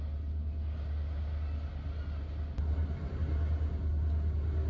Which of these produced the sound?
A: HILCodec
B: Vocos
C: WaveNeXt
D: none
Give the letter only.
D